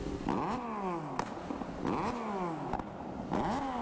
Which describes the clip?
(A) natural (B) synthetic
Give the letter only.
A